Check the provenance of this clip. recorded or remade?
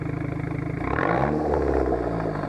recorded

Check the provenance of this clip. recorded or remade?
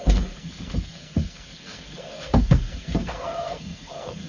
remade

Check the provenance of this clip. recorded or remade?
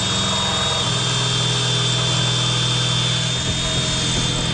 recorded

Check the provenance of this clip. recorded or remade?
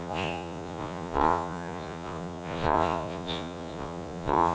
remade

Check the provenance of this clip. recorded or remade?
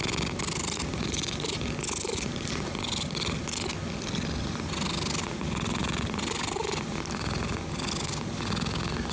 recorded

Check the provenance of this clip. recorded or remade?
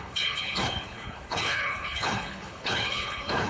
remade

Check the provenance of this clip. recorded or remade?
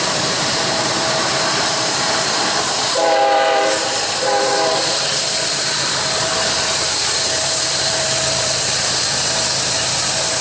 remade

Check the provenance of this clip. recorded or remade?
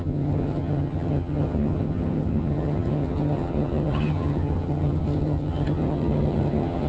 remade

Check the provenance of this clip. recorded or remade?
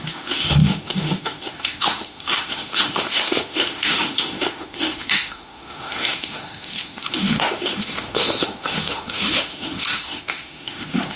remade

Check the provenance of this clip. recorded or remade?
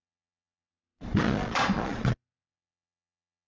remade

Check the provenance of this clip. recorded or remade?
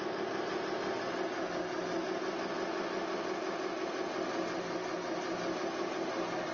recorded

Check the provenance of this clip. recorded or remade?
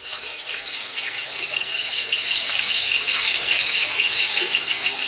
remade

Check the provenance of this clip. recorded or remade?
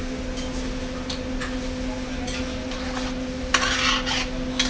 recorded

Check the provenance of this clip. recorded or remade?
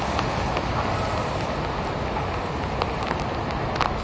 recorded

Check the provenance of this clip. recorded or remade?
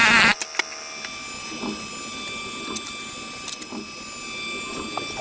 recorded